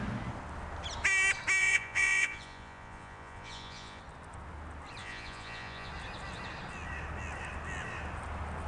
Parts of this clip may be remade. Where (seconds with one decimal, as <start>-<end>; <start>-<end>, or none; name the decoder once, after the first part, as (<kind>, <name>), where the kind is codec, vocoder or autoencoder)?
1.6-4.0 (vocoder, Vocos); 5.0-5.9